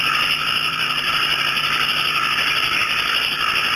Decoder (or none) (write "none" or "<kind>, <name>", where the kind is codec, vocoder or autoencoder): vocoder, BigVGAN v2